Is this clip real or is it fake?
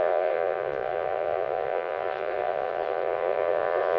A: fake